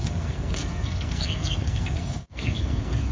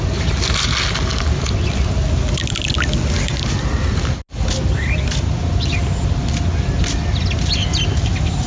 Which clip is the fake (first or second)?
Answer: first